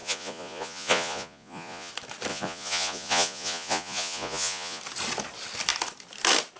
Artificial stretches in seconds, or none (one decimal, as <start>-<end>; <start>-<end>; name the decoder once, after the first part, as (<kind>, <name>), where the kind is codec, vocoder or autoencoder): 0.0-1.9 (vocoder, Vocos); 2.3-4.8